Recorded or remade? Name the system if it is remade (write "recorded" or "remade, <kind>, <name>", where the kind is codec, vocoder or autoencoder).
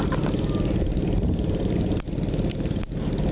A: recorded